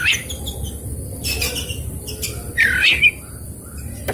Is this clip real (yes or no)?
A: yes